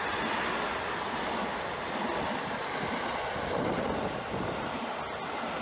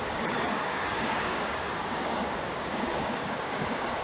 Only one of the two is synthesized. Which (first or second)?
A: second